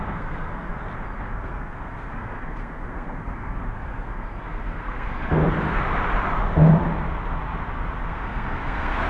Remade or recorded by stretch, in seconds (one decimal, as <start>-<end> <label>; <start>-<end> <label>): 0.0-0.7 remade; 0.7-1.2 recorded; 1.2-5.4 remade; 5.4-8.1 recorded; 8.1-9.1 remade